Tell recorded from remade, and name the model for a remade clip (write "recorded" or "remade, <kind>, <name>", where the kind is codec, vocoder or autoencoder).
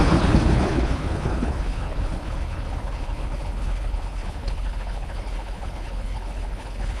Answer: remade, codec, HILCodec